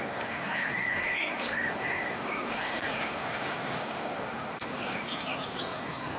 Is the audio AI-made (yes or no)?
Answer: yes